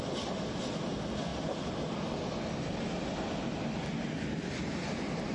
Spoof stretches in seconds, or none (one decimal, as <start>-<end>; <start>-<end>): none